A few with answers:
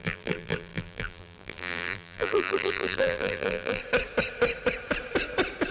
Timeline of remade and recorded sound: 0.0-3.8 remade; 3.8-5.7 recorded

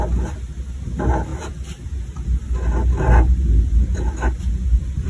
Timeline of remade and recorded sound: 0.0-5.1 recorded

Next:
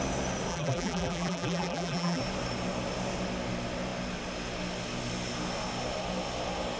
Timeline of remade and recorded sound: 0.0-0.5 recorded; 0.5-2.2 remade; 2.2-6.8 recorded

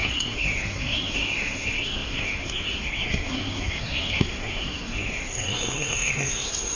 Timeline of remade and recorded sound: 0.0-6.8 remade

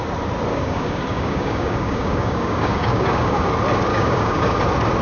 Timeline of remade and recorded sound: 0.0-0.5 recorded; 0.5-3.5 remade; 3.5-3.9 recorded; 3.9-4.6 remade; 4.6-5.0 recorded

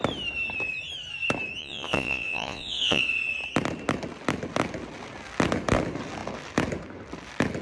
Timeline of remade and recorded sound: 0.0-1.6 recorded; 1.6-3.0 remade; 3.0-7.6 recorded

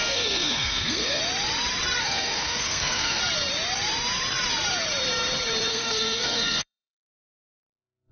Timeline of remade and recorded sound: 0.0-1.2 remade; 1.2-2.0 recorded; 2.0-3.2 remade; 3.2-5.7 recorded; 5.7-8.1 remade

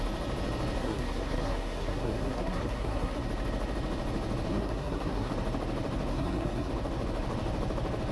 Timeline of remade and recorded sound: 0.0-0.8 recorded; 0.8-3.2 remade; 3.2-4.5 recorded; 4.5-5.3 remade; 5.3-6.1 recorded; 6.1-6.7 remade; 6.7-8.1 recorded